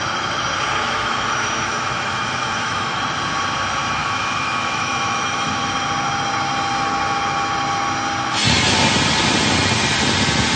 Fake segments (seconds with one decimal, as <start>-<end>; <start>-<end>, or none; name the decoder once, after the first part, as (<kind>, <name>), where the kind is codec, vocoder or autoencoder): 0.8-3.0 (autoencoder, DAC-VAE); 4.0-5.7